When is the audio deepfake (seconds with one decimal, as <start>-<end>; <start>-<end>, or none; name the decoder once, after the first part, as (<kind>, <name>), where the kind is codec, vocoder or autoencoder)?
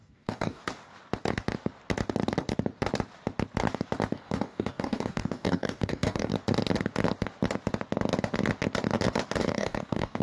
0.0-0.6 (codec, DAC); 4.1-6.3; 9.4-10.2